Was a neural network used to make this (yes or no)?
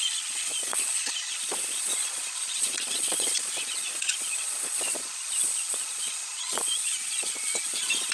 yes